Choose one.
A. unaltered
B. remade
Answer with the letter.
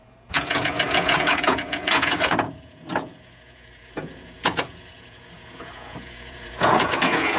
B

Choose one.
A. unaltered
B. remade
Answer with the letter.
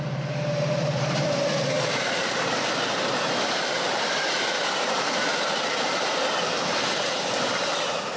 B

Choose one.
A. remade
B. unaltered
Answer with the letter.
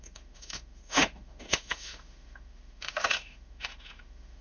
A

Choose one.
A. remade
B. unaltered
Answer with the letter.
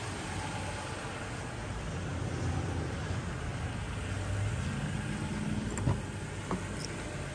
B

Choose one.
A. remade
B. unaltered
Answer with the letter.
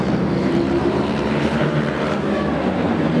A